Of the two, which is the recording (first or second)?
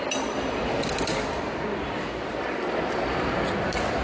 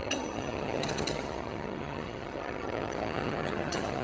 first